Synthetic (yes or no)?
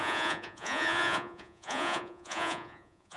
yes